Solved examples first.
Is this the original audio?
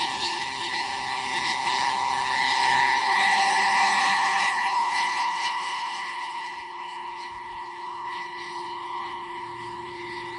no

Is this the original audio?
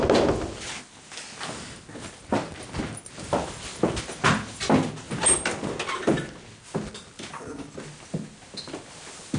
yes